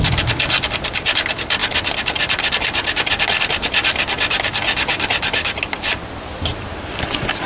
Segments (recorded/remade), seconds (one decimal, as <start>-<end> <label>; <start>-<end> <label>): 0.0-1.6 remade; 1.6-3.4 recorded; 3.4-7.5 remade